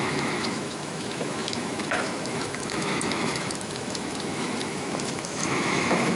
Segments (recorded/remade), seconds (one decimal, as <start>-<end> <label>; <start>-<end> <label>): 0.0-6.2 remade